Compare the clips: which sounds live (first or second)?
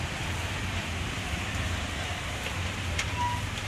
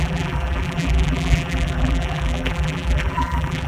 first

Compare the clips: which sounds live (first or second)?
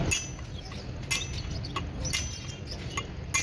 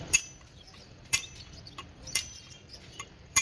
first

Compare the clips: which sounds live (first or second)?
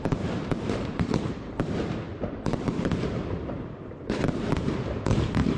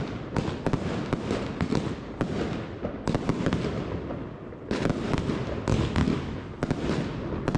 second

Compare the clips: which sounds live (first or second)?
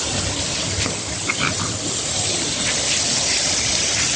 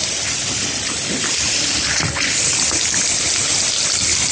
second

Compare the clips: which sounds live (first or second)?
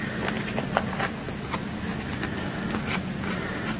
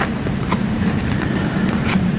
first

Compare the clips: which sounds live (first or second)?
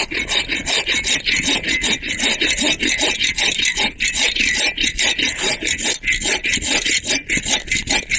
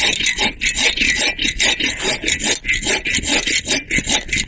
second